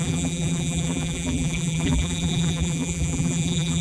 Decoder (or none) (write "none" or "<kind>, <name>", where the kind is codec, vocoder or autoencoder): vocoder, BigVGAN v2